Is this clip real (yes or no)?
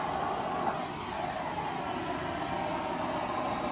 yes